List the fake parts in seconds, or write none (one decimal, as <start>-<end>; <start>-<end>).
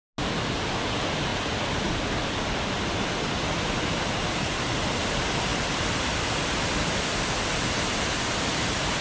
1.3-4.0; 5.5-6.1